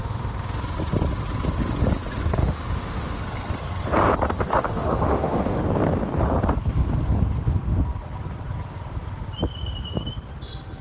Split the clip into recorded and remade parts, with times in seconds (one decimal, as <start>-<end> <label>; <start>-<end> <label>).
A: 0.0-0.6 remade; 0.6-2.4 recorded; 2.4-3.2 remade; 3.2-4.5 recorded; 4.5-5.6 remade; 5.6-10.8 recorded